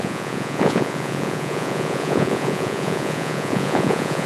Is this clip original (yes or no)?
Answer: no